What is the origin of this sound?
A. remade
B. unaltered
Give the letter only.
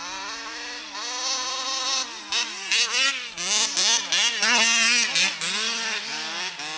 B